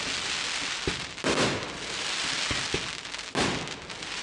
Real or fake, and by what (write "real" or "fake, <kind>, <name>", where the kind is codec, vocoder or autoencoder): real